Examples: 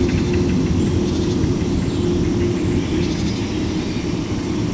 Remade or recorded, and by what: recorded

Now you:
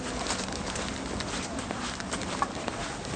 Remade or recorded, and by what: recorded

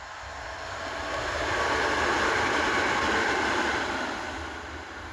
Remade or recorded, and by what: recorded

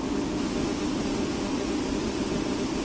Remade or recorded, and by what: recorded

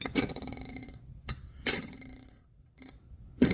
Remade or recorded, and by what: remade, vocoder, WaveNeXt